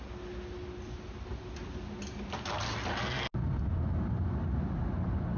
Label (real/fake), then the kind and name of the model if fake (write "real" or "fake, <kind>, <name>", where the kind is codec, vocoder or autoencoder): real